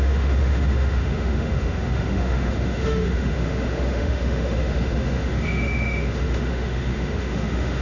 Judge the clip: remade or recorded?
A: remade